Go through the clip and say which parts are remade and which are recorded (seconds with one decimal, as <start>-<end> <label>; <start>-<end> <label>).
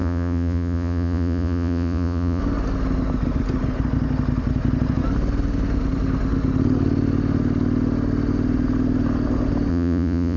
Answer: 0.0-2.4 remade; 2.4-9.7 recorded; 9.7-10.4 remade